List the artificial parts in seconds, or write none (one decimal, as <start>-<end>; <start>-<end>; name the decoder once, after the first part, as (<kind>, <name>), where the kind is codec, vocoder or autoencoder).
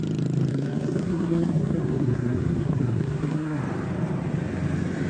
0.5-3.6 (codec, SNAC)